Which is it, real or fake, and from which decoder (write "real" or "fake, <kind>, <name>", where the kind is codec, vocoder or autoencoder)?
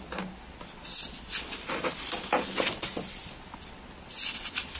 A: real